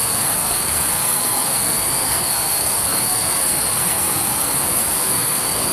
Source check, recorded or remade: remade